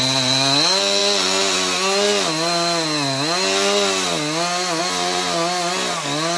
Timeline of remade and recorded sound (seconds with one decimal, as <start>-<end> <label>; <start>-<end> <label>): 0.0-6.4 recorded

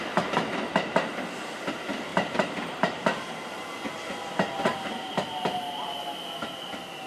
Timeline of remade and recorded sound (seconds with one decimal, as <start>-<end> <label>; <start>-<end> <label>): 0.0-2.1 recorded; 2.1-3.3 remade; 3.3-7.1 recorded